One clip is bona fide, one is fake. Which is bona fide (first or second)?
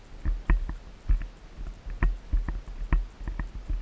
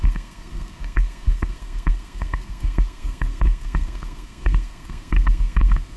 first